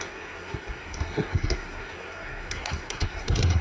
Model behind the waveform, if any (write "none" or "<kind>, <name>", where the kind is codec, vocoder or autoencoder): codec, SNAC